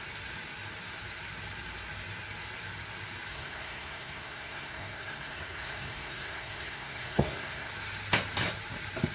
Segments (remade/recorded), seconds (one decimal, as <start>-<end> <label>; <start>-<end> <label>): 0.0-3.3 recorded; 3.3-7.7 remade; 7.7-9.1 recorded